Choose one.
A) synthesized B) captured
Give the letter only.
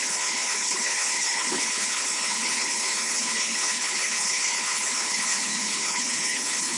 A